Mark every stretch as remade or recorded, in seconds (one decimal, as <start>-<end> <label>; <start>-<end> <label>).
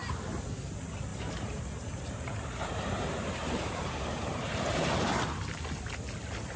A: 0.0-1.1 recorded; 1.1-5.1 remade; 5.1-6.6 recorded